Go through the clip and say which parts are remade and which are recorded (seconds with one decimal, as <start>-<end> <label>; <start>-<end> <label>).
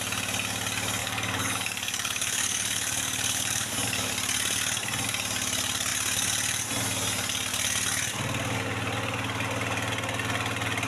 0.0-1.0 recorded; 1.0-4.1 remade; 4.1-10.9 recorded